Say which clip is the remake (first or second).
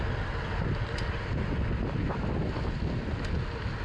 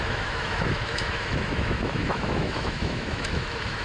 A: second